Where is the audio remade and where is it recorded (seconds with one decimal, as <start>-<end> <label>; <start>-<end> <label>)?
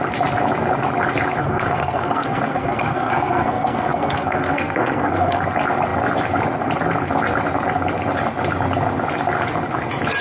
0.0-1.4 recorded; 1.4-5.4 remade; 5.4-10.2 recorded